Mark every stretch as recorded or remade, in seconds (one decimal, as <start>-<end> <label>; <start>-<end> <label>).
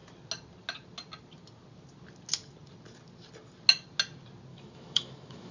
0.0-4.5 recorded; 4.5-5.5 remade